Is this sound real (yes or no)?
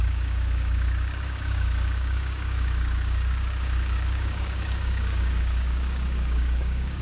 no